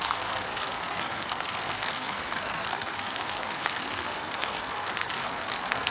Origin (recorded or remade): remade